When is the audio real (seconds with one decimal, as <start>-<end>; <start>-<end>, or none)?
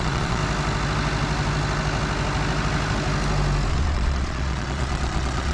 0.4-3.7